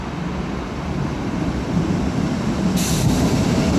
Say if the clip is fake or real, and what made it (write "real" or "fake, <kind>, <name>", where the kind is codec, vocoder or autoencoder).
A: real